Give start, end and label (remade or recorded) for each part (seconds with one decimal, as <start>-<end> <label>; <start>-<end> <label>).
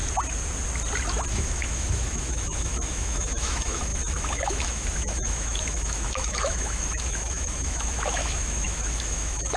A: 0.0-1.3 recorded; 1.3-9.6 remade